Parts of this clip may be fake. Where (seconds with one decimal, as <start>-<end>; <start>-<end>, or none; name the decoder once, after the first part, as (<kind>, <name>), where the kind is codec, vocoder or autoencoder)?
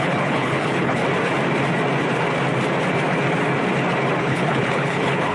0.0-1.0 (codec, HILCodec); 4.2-5.3